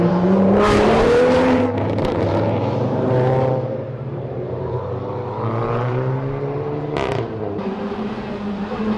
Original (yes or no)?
no